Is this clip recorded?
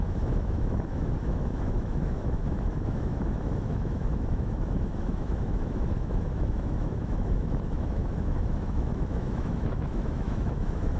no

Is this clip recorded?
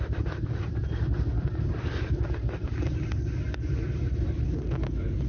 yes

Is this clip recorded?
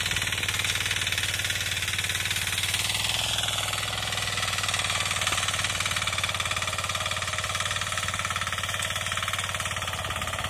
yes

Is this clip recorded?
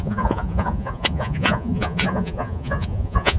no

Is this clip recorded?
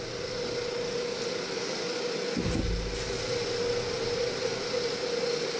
yes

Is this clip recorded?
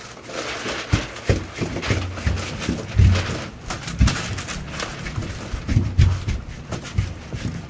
yes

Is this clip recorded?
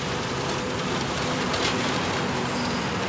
no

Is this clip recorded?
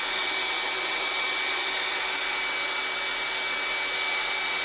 yes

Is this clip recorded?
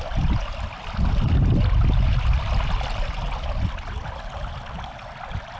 yes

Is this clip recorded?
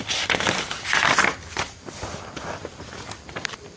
no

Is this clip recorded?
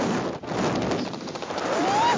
yes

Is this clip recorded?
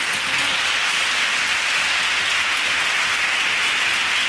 yes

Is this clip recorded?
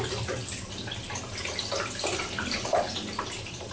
yes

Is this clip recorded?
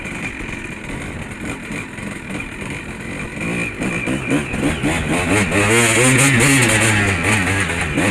yes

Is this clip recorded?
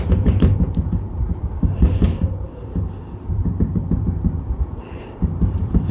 no